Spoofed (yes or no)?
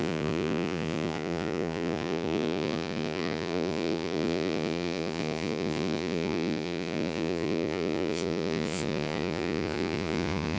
yes